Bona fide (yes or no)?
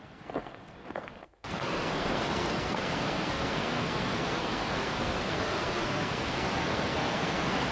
no